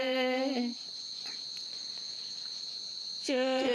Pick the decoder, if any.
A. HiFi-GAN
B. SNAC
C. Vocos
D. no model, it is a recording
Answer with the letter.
C